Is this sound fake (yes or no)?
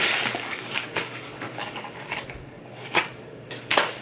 yes